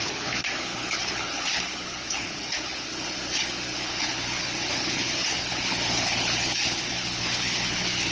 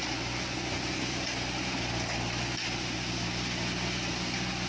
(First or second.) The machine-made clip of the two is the first